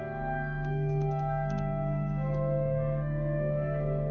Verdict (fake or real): fake